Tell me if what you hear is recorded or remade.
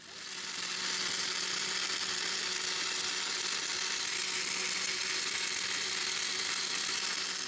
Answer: recorded